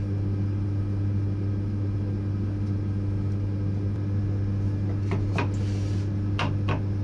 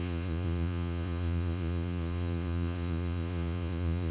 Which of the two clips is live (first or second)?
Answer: first